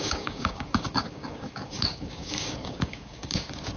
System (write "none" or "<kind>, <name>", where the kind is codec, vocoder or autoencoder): codec, DAC